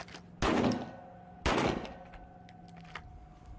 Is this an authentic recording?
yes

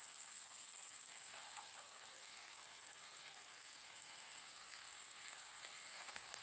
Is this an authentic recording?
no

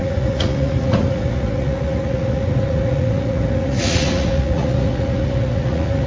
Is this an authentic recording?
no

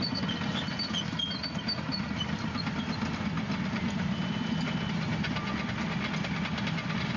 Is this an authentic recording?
yes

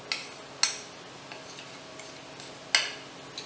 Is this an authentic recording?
yes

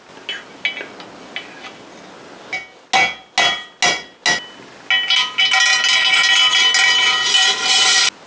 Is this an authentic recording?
yes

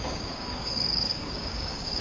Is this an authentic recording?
no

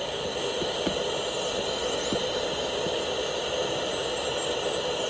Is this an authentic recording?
yes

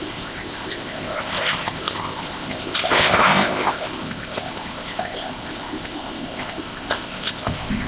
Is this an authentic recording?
no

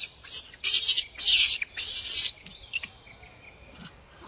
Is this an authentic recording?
yes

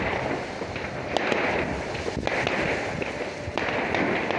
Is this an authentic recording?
yes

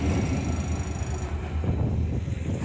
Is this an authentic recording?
yes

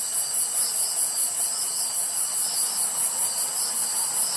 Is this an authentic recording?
yes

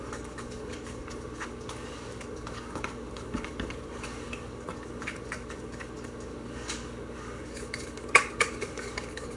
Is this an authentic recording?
no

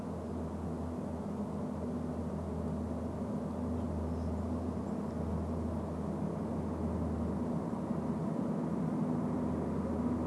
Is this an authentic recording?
yes